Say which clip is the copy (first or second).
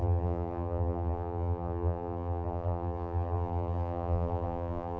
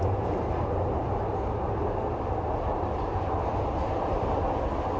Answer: first